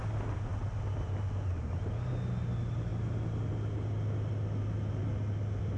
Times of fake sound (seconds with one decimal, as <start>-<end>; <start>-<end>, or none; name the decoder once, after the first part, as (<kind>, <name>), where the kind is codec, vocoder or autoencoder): none